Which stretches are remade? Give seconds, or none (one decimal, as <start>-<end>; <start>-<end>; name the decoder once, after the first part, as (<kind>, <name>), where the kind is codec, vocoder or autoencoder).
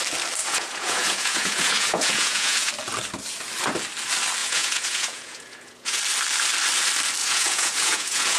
0.4-2.7 (vocoder, Vocos); 4.4-6.0; 7.2-8.4